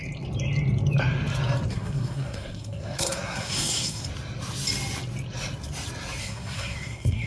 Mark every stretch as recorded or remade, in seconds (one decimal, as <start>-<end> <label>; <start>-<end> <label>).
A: 0.0-1.7 recorded; 1.7-4.0 remade; 4.0-6.2 recorded; 6.2-7.3 remade